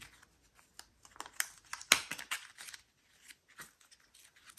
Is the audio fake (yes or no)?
no